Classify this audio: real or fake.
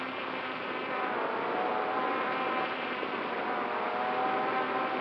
real